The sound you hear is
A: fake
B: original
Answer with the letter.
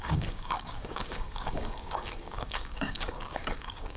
A